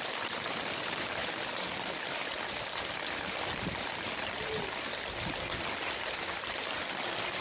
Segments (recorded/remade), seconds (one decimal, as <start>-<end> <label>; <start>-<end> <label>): 0.0-7.4 recorded